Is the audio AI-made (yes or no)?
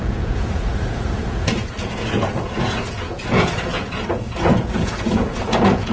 yes